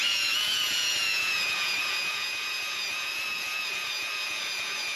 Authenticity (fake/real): fake